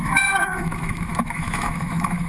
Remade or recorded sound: remade